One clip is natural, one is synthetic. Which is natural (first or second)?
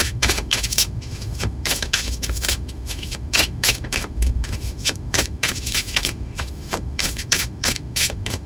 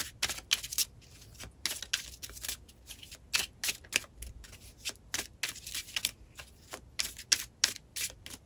second